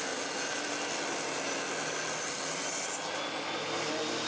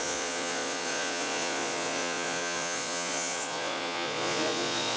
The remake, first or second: second